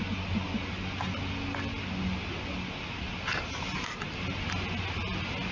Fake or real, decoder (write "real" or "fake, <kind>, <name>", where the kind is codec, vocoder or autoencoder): real